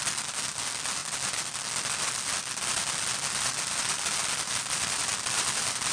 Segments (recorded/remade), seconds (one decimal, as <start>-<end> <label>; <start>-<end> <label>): 0.0-5.9 recorded